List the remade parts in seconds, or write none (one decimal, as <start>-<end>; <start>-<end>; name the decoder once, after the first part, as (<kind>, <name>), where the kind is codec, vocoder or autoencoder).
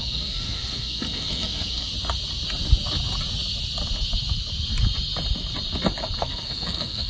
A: 0.0-1.9 (codec, SNAC); 6.2-7.1